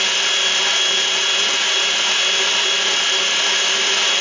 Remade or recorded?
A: recorded